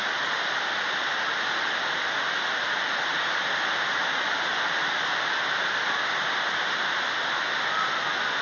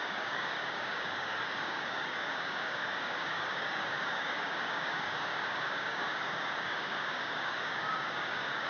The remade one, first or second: second